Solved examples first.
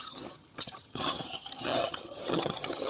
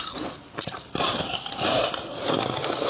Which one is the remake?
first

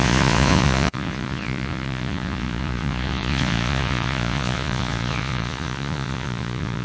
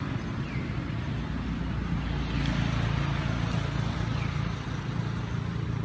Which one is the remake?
first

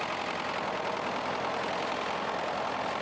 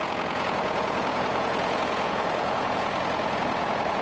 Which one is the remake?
second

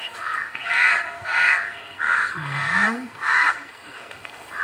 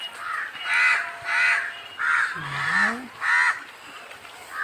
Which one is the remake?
first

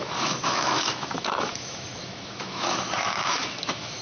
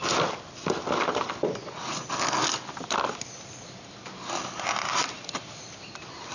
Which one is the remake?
first